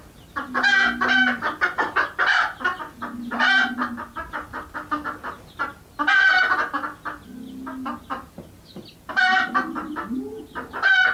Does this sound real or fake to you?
real